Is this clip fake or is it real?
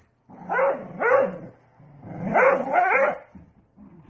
real